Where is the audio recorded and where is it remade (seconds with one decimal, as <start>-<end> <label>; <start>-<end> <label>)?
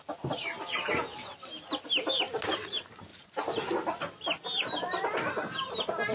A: 0.0-6.1 recorded